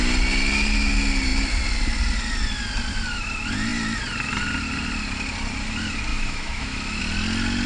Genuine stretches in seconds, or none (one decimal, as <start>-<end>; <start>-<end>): 0.0-6.1; 7.0-7.7